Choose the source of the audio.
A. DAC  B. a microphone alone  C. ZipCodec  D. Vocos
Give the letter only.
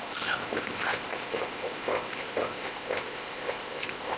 C